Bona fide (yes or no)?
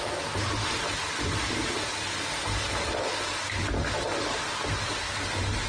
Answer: yes